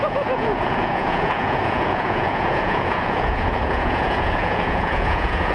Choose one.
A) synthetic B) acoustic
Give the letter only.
A